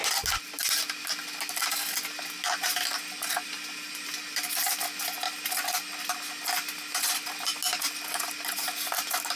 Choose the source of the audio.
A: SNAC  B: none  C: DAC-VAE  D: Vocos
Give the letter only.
B